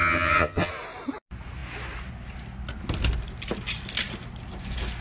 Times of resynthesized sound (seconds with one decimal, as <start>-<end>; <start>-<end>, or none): 0.0-0.7